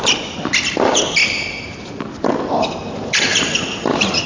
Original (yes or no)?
yes